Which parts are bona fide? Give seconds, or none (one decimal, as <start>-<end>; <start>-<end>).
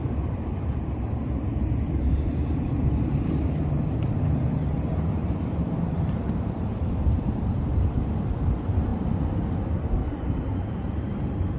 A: 8.9-9.5